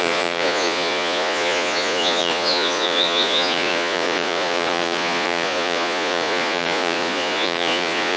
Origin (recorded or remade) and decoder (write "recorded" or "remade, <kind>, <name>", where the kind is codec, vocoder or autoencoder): remade, vocoder, Vocos